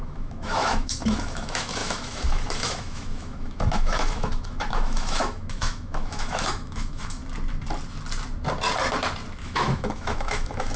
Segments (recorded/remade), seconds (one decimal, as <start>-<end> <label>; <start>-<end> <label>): 0.0-7.2 remade; 7.2-9.4 recorded; 9.4-10.8 remade